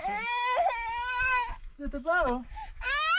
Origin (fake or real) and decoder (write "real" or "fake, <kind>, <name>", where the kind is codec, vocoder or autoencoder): fake, autoencoder, DAC-VAE